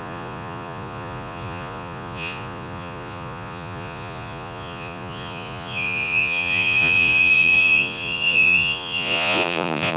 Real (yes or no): no